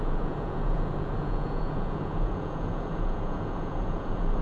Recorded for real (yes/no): no